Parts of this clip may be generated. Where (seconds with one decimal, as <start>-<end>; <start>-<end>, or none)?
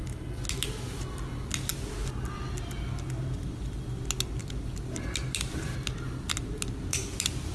none